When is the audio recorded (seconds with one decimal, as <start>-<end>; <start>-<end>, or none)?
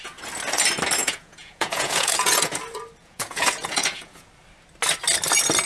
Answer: 0.0-1.0; 2.6-3.0; 4.3-5.7